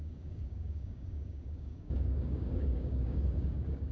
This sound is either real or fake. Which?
fake